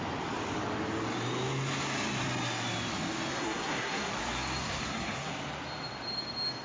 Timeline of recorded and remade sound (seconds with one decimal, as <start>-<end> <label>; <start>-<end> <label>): 0.0-3.3 recorded; 3.3-4.1 remade; 4.1-4.6 recorded; 4.6-5.3 remade; 5.3-6.6 recorded